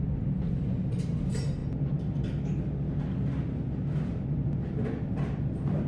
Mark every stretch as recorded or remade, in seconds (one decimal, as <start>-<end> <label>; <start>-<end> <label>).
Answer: 0.0-5.9 recorded